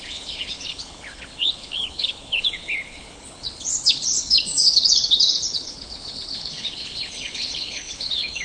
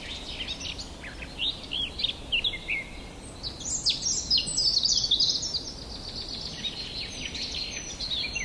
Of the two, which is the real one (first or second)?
second